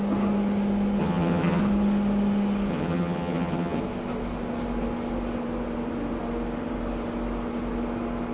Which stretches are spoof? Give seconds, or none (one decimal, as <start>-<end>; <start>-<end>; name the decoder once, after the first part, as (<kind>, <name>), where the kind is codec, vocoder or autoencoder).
1.0-1.6 (vocoder, HiFi-GAN); 2.7-3.8